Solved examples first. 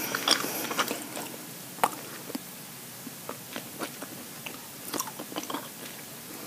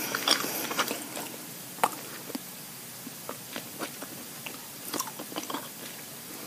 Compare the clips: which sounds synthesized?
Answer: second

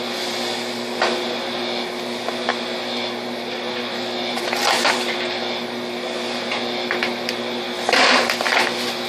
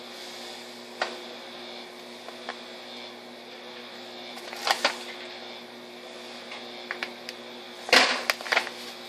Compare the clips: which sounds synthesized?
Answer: first